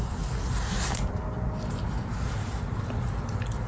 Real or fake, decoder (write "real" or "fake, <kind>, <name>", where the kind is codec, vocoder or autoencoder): real